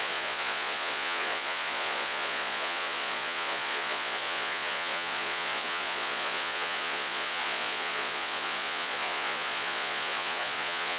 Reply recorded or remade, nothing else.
remade